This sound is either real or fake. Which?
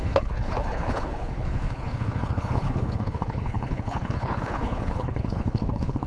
fake